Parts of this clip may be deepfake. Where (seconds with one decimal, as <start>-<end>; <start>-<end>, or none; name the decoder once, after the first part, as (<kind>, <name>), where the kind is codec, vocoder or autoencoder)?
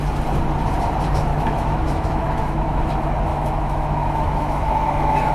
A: 1.3-2.9 (autoencoder, DAC-VAE); 3.3-5.3